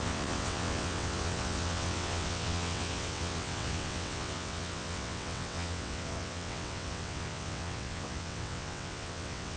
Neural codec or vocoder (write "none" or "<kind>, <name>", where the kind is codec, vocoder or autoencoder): vocoder, WaveNeXt